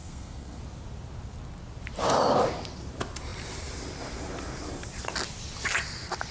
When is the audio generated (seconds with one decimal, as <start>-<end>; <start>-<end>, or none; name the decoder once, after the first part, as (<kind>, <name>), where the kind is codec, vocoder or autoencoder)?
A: 0.0-0.6 (codec, SNAC)